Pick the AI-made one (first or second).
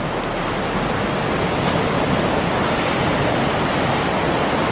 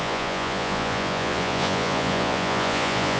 second